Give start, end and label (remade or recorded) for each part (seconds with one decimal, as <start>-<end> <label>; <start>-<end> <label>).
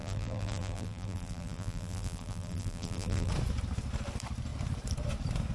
0.0-3.3 remade; 3.3-5.5 recorded